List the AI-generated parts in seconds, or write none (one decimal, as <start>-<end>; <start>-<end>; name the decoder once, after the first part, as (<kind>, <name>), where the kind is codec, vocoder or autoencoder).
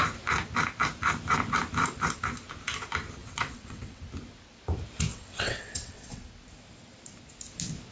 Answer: 3.2-4.0 (vocoder, WaveNeXt); 5.1-6.2